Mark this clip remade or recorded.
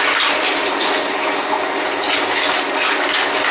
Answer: recorded